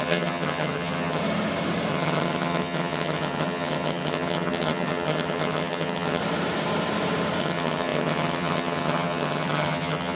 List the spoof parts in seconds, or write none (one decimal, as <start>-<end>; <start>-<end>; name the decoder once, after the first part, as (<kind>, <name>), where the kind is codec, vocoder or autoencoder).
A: 0.0-1.2 (vocoder, HiFi-GAN); 1.9-6.2; 7.4-10.2